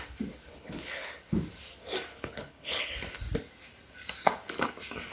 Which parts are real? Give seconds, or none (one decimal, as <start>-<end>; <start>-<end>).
0.0-0.5; 1.1-2.1; 2.9-5.1